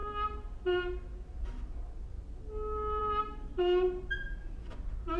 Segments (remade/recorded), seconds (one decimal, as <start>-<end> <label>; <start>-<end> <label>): 0.0-5.2 recorded